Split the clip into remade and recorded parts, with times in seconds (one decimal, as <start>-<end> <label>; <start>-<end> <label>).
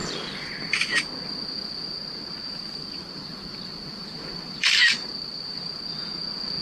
0.0-2.0 recorded; 2.0-3.3 remade; 3.3-3.9 recorded; 3.9-5.6 remade; 5.6-6.6 recorded